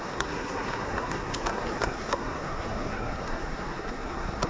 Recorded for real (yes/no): no